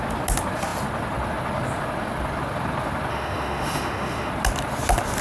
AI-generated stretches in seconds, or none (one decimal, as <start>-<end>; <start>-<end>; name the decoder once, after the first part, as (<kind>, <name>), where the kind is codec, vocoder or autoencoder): 3.1-4.3 (autoencoder, DAC-VAE)